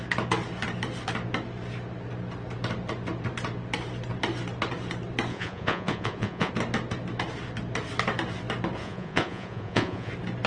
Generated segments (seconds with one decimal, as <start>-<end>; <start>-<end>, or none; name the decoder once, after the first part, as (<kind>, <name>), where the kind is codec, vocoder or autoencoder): 5.3-6.5 (vocoder, Vocos); 8.8-10.1